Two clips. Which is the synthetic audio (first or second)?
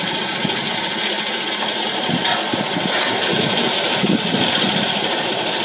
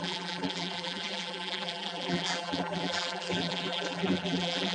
second